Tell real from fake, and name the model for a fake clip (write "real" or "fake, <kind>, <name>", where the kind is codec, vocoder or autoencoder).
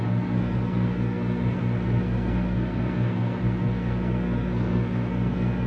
fake, codec, SNAC